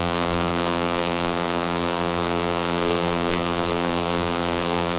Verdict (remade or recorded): remade